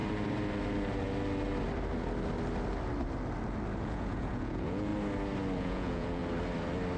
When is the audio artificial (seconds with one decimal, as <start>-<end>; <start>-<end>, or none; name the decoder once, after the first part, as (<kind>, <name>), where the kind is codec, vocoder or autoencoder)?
3.8-4.9 (vocoder, Vocos); 5.6-6.2